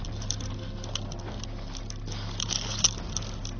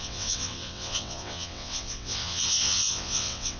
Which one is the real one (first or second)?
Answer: first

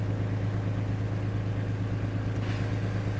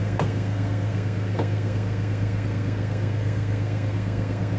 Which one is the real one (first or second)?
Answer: first